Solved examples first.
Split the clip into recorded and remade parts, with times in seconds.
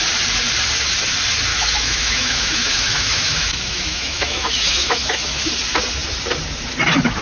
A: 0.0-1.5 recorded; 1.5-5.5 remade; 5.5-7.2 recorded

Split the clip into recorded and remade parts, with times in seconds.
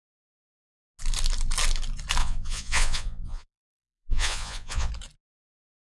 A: 0.0-2.2 recorded; 2.2-4.9 remade; 4.9-5.9 recorded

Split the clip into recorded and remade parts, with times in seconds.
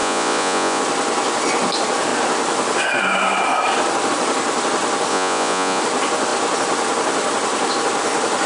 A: 0.0-0.8 remade; 0.8-5.1 recorded; 5.1-5.8 remade; 5.8-8.5 recorded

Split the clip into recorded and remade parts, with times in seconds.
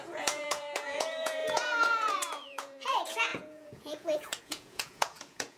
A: 0.0-5.6 remade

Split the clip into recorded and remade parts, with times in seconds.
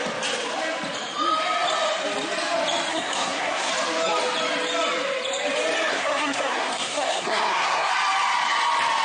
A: 0.0-2.9 recorded; 2.9-3.7 remade; 3.7-5.9 recorded; 5.9-7.9 remade; 7.9-9.0 recorded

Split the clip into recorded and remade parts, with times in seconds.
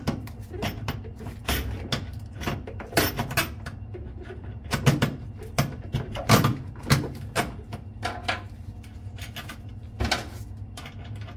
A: 0.0-11.4 recorded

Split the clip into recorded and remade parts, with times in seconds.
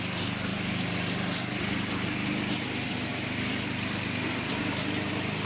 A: 0.0-5.5 recorded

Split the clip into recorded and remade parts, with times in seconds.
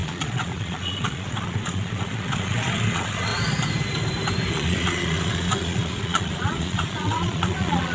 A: 0.0-3.3 remade; 3.3-4.5 recorded; 4.5-7.9 remade